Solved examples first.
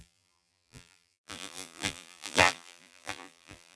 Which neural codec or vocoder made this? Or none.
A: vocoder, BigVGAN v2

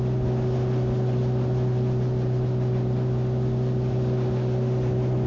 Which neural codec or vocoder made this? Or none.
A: none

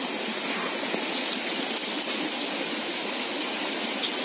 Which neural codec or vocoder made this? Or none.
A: none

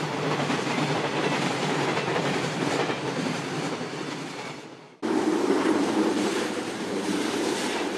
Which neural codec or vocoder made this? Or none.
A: vocoder, BigVGAN v2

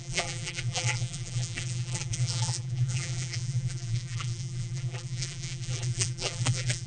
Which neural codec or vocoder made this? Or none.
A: vocoder, BigVGAN v2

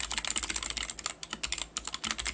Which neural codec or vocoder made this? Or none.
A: none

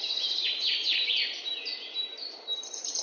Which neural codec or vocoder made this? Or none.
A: vocoder, BigVGAN v2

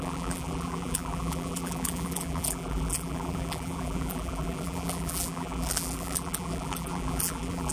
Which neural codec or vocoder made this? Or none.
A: vocoder, BigVGAN v2